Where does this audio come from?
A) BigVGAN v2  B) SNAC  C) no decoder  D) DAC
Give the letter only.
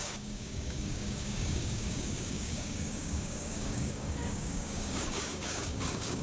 D